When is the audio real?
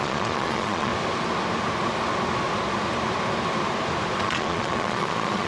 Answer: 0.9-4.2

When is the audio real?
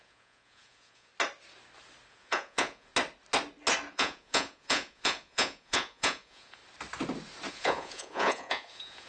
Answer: 1.1-2.1; 2.9-3.9; 6.6-7.5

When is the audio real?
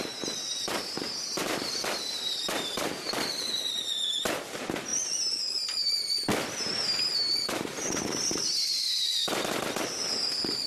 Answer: 0.0-0.5; 3.7-7.1; 9.3-10.7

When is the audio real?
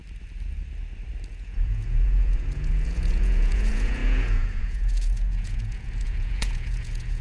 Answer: 0.0-1.3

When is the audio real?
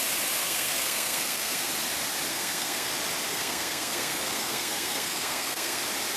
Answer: 0.0-0.4; 1.7-2.3; 2.9-3.3; 5.8-6.2